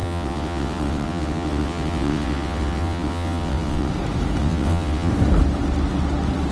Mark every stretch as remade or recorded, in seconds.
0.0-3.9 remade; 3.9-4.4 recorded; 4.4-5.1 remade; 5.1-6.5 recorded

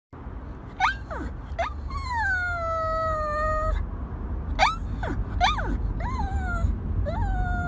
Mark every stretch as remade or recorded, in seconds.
0.0-7.7 recorded

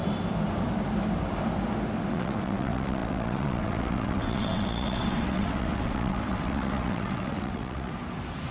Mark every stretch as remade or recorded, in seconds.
0.0-2.1 recorded; 2.1-7.9 remade; 7.9-8.5 recorded

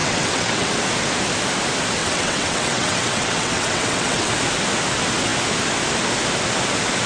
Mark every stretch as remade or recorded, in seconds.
0.0-0.7 remade; 0.7-2.0 recorded; 2.0-4.3 remade; 4.3-7.1 recorded

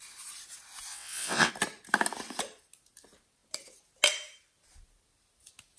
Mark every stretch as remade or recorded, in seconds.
0.0-0.9 recorded; 0.9-1.5 remade; 1.5-5.8 recorded